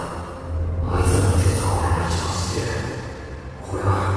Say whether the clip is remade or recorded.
recorded